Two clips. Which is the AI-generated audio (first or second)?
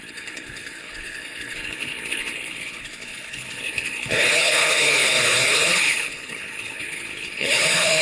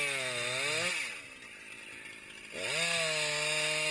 first